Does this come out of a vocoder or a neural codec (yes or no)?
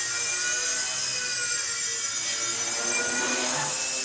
no